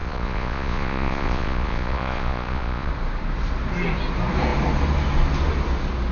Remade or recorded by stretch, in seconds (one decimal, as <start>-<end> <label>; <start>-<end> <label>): 0.0-2.9 remade; 2.9-6.1 recorded